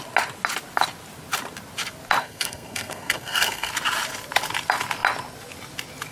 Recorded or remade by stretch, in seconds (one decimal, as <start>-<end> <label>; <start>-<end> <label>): 0.0-2.2 recorded; 2.2-3.7 remade; 3.7-6.1 recorded